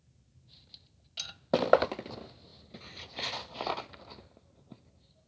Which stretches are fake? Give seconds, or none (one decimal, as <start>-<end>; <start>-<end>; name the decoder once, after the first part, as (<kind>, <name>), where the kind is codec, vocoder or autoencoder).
none